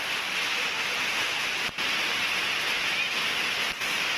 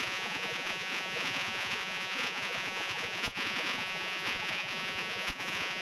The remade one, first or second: second